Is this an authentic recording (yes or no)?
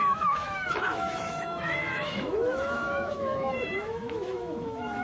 no